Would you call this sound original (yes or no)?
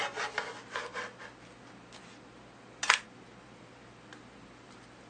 yes